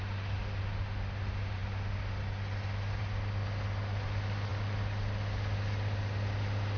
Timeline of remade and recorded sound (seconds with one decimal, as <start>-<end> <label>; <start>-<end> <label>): 0.0-6.8 recorded